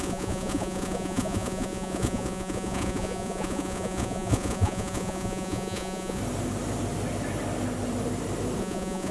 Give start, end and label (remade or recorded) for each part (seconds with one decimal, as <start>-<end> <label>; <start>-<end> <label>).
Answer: 0.0-6.2 remade; 6.2-8.6 recorded; 8.6-9.1 remade